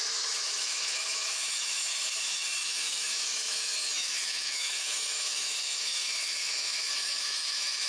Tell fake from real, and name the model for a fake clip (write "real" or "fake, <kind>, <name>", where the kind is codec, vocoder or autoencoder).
fake, autoencoder, DAC-VAE